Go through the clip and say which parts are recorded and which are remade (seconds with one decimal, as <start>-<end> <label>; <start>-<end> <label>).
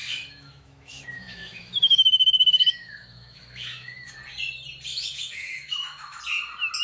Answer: 0.0-4.1 remade; 4.1-4.9 recorded; 4.9-6.2 remade; 6.2-6.8 recorded